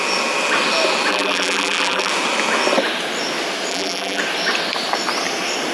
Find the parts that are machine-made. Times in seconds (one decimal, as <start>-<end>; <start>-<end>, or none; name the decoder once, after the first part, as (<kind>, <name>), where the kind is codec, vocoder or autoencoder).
1.1-2.1 (vocoder, BigVGAN v2); 3.7-4.2